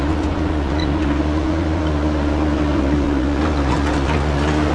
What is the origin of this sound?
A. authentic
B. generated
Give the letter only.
B